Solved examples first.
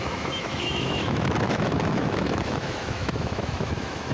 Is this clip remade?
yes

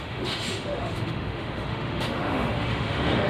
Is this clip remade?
yes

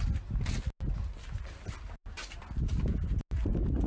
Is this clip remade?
no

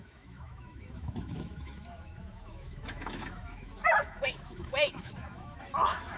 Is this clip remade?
yes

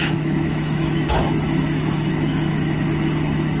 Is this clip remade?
yes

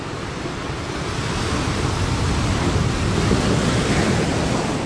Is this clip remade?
no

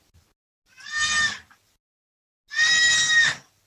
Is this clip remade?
no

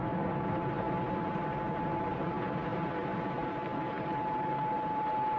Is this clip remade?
no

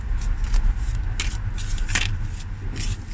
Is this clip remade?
no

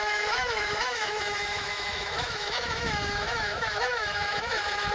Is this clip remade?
yes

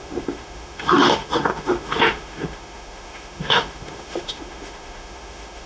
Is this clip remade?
yes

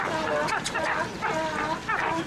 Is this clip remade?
no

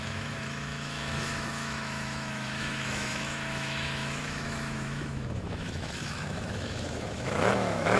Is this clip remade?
yes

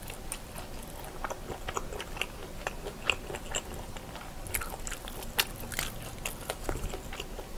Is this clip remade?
no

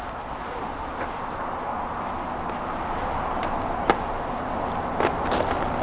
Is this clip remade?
no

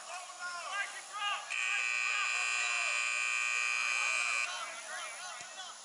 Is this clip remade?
no